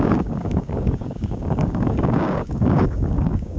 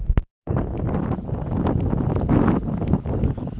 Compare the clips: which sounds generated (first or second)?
first